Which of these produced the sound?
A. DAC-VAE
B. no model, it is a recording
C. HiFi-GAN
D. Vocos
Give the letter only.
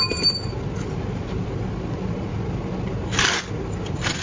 B